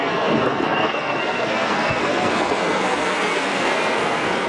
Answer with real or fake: fake